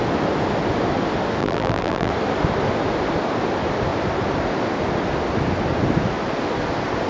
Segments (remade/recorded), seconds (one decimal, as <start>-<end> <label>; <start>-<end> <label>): 0.0-1.4 recorded; 1.4-2.1 remade; 2.1-7.1 recorded